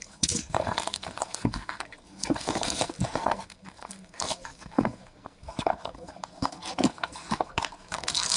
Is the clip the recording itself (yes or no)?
no